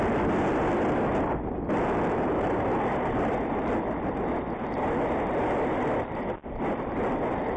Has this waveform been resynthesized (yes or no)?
yes